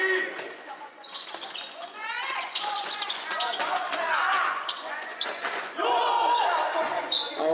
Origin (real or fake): fake